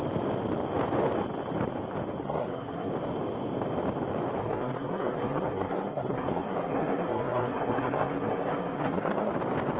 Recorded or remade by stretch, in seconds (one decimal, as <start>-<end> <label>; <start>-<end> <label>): 0.0-2.2 recorded; 2.2-2.9 remade; 2.9-4.4 recorded; 4.4-9.3 remade; 9.3-9.8 recorded